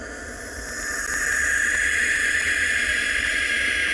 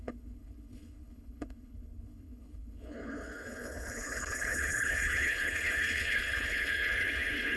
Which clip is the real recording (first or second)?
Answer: first